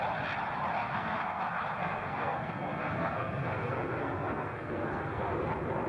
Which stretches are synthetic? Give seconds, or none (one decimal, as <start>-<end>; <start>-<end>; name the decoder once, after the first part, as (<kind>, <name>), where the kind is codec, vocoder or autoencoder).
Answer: 0.8-1.4 (codec, SNAC); 1.8-5.3